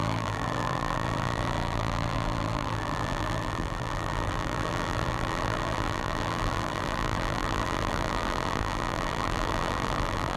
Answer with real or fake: fake